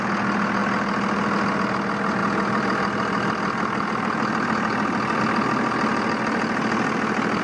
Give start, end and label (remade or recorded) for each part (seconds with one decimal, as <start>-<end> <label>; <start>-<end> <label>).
0.0-2.2 recorded; 2.2-5.2 remade; 5.2-7.4 recorded